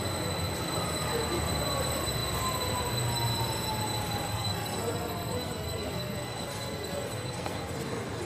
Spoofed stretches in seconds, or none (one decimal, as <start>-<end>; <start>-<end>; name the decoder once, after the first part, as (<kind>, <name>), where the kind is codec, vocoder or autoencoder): 4.3-8.2 (codec, SNAC)